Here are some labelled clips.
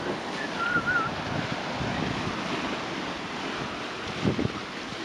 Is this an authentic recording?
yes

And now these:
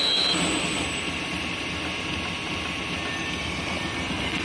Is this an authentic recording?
yes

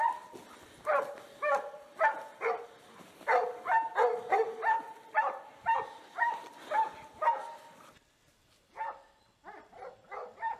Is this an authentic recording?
yes